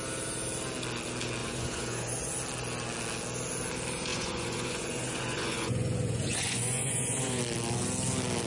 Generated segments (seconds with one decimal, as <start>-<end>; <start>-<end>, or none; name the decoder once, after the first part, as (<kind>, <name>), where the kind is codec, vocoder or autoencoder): 1.4-2.3 (vocoder, Vocos); 4.1-7.4